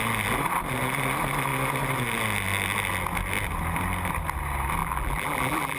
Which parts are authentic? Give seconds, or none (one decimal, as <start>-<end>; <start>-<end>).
0.0-4.8